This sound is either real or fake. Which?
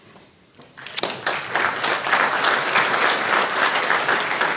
real